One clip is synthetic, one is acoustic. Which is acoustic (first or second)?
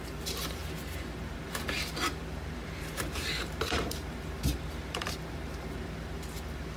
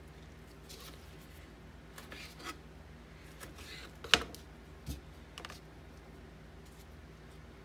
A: second